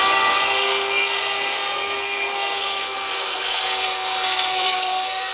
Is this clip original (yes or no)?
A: no